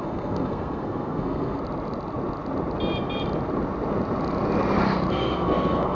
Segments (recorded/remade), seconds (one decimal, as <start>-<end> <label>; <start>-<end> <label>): 0.0-1.6 remade; 1.6-5.1 recorded; 5.1-5.9 remade